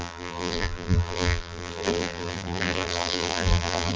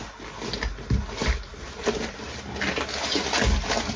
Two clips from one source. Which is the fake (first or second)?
first